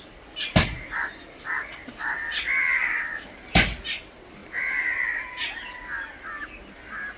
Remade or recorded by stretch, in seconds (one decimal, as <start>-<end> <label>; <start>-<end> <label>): 0.0-7.2 recorded